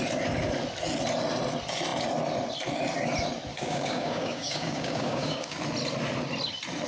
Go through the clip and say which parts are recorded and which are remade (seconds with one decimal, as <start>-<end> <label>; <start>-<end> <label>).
0.0-3.5 recorded; 3.5-5.6 remade; 5.6-6.9 recorded